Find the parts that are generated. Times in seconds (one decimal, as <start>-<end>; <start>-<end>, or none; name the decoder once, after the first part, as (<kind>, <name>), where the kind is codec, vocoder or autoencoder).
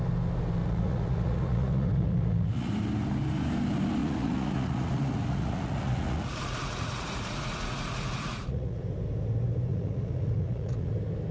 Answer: 0.6-2.7 (vocoder, Vocos); 4.0-8.8; 9.7-10.9